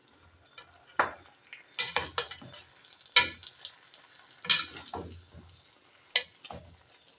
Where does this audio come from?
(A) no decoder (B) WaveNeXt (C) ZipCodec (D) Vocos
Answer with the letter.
A